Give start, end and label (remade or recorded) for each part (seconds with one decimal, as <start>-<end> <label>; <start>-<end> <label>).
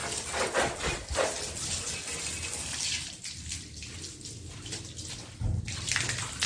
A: 0.0-6.5 recorded